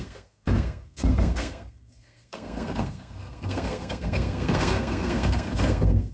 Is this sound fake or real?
fake